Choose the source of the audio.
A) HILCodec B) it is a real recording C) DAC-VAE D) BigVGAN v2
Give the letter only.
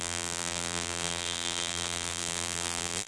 D